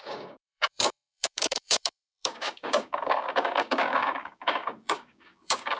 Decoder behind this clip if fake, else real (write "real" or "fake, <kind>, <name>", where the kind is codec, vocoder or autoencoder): fake, codec, DAC